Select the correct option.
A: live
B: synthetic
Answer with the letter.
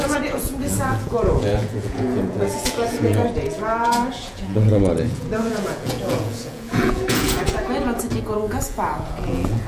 B